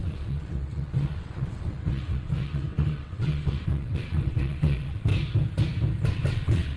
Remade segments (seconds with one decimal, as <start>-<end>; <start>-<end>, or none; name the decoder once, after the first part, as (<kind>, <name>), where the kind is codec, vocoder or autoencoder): 0.0-5.1 (vocoder, WaveNeXt); 6.1-6.8